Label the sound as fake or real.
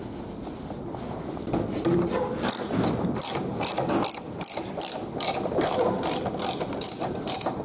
real